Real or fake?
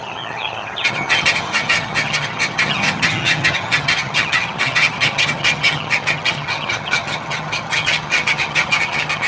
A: fake